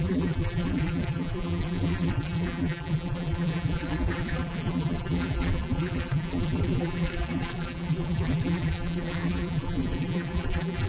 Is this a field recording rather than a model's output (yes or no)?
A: no